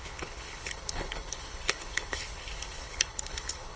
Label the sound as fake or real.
fake